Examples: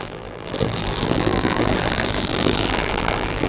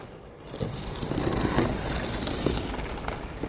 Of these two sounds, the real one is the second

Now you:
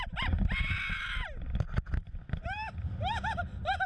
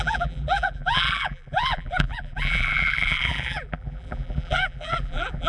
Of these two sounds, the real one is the first